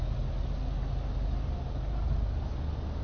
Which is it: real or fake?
real